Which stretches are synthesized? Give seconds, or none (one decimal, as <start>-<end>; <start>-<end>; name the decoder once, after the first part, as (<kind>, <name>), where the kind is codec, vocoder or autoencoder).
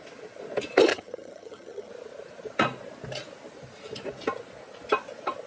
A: 0.9-1.9 (vocoder, HiFi-GAN)